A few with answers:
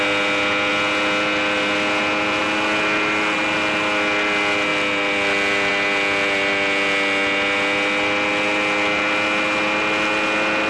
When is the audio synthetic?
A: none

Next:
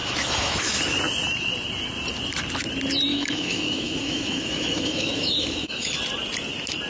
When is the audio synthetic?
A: 0.0-0.8 (autoencoder, DAC-VAE); 3.1-6.0

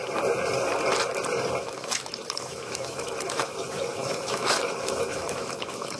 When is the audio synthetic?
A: 1.6-6.0 (autoencoder, DAC-VAE)

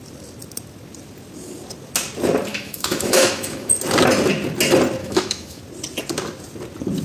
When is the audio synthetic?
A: 2.5-3.7 (autoencoder, DAC-VAE); 5.0-5.6

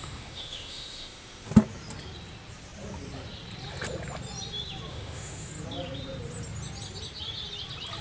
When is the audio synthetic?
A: 0.0-1.5 (autoencoder, DAC-VAE); 4.9-5.5

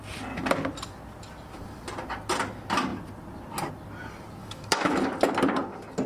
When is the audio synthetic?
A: 4.4-5.0 (autoencoder, DAC-VAE)